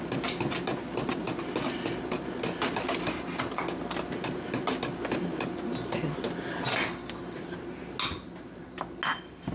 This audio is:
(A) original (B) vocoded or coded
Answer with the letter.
A